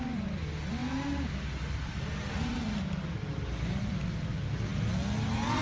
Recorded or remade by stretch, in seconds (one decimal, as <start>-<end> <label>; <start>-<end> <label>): 0.0-5.6 recorded